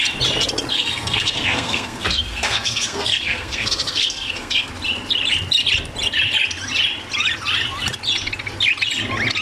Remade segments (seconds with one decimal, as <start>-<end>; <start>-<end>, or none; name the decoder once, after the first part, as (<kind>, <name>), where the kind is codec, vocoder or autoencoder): 0.7-4.7 (codec, SNAC)